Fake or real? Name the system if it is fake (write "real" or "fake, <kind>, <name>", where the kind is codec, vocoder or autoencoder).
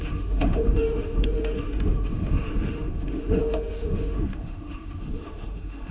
fake, autoencoder, DAC-VAE